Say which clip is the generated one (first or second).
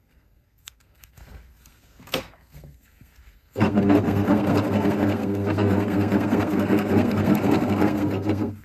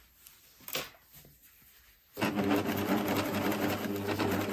first